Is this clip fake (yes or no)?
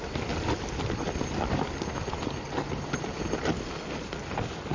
no